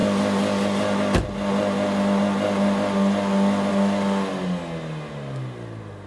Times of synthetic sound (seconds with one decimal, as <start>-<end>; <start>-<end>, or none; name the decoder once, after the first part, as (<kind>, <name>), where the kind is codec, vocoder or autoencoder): none